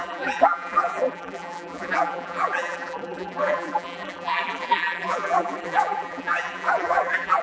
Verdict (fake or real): fake